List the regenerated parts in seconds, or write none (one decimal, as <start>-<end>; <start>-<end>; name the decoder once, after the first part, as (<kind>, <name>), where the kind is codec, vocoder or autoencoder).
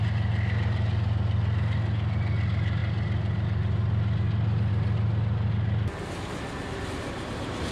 none